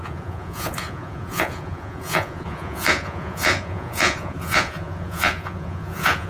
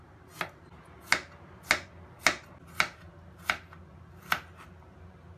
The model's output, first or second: first